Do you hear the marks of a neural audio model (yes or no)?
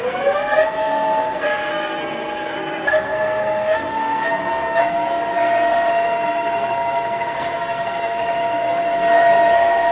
yes